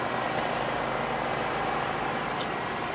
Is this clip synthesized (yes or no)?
no